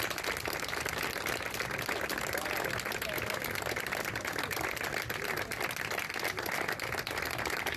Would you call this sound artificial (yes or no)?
no